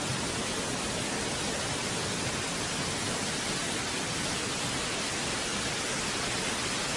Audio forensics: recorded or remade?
recorded